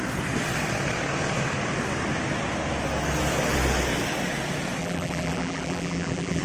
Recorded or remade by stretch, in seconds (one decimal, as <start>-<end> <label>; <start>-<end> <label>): 0.0-4.8 recorded; 4.8-6.4 remade